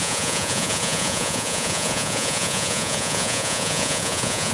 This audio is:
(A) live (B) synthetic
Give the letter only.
B